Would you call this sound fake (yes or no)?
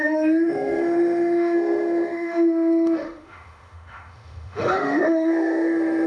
yes